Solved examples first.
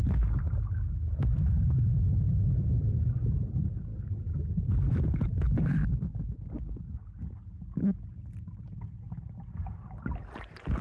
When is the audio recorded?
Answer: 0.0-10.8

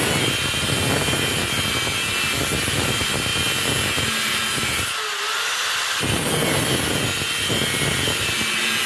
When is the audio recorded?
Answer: 0.0-8.9

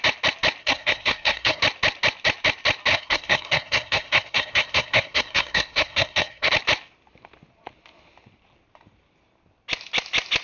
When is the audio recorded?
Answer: 0.0-0.6; 1.6-2.9; 6.5-10.4

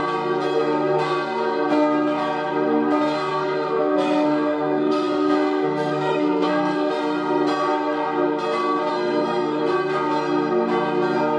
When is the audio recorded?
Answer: 0.0-3.3; 6.9-8.9; 9.6-11.4

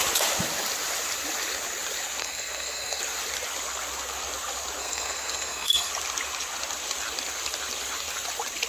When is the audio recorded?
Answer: 0.0-2.2; 3.0-4.8; 5.9-8.7

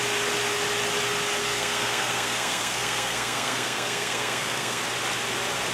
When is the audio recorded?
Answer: 0.0-1.4; 4.8-5.7